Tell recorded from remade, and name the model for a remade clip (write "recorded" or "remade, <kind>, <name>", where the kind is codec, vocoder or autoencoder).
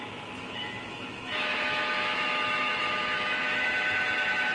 remade, autoencoder, DAC-VAE